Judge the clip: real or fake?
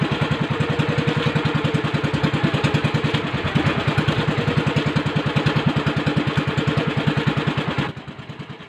real